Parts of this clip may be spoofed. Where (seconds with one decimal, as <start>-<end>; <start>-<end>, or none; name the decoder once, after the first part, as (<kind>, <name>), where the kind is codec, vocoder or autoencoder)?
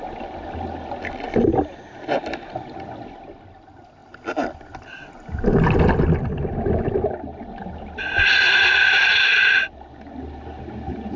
none